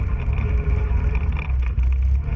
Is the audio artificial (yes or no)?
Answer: no